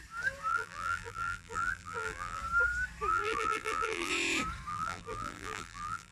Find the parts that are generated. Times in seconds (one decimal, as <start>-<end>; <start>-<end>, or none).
0.5-2.4; 3.1-4.1; 4.7-6.1